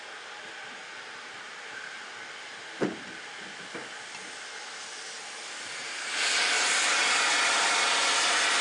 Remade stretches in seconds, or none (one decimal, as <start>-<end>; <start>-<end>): 0.8-2.0